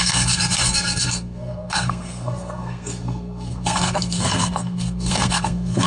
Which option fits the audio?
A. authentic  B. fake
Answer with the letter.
B